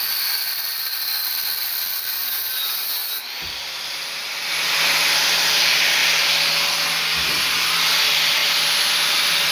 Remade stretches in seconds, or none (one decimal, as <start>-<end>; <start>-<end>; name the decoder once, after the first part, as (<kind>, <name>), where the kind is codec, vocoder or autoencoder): 0.0-6.0 (vocoder, BigVGAN v2); 7.3-8.4; 9.1-9.5